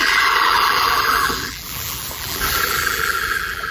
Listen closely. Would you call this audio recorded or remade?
remade